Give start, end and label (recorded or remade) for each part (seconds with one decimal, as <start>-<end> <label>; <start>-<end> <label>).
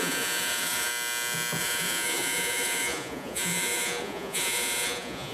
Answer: 0.0-0.9 remade; 0.9-1.6 recorded; 1.6-5.3 remade